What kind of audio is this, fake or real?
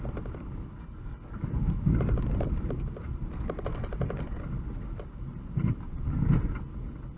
real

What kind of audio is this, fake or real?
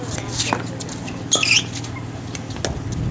real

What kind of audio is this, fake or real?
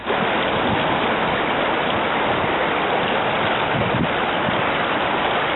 real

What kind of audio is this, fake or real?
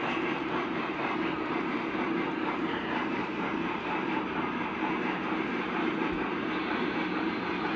fake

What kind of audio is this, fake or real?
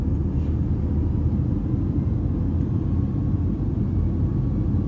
real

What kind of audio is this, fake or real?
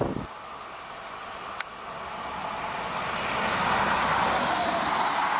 real